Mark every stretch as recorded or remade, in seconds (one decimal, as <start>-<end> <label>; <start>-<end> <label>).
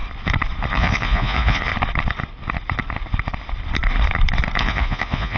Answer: 0.0-0.7 recorded; 0.7-1.7 remade; 1.7-4.6 recorded; 4.6-5.4 remade